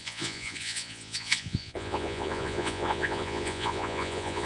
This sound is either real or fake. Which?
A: fake